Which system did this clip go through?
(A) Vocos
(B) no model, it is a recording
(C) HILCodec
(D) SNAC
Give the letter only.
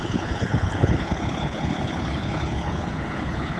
C